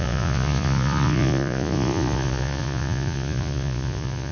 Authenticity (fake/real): fake